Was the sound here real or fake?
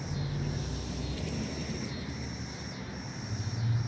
real